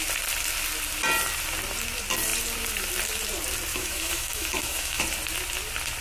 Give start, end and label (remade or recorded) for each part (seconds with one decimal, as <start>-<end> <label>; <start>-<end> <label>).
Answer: 0.0-3.7 recorded; 3.7-5.0 remade; 5.0-6.0 recorded